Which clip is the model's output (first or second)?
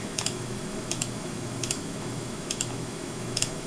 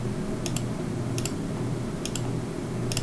first